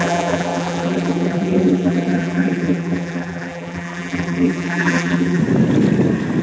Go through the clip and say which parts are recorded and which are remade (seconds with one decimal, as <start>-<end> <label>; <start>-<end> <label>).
0.0-5.4 remade; 5.4-6.4 recorded